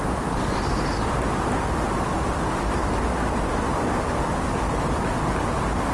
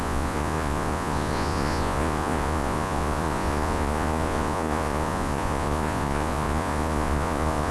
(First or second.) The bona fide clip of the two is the first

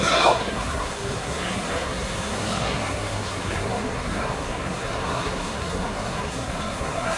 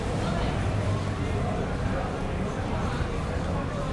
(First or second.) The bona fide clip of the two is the second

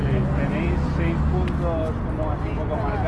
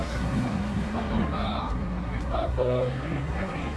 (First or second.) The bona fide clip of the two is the first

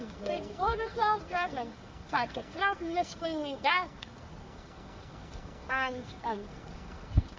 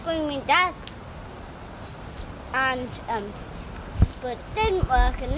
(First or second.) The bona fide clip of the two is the second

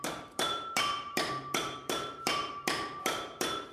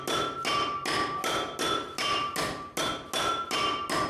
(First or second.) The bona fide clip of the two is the second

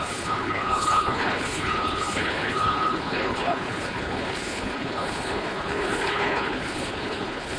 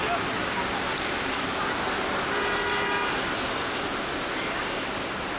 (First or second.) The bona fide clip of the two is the second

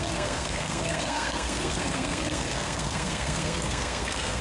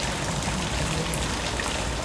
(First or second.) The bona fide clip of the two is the second